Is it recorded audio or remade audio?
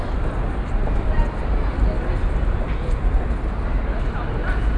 recorded